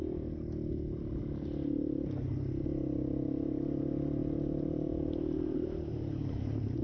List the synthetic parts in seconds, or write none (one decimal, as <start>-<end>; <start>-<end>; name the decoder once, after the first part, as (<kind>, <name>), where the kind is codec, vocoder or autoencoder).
4.2-6.8 (vocoder, BigVGAN v2)